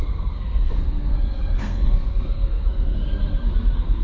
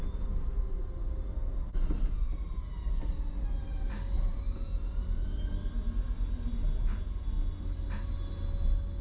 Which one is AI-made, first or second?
first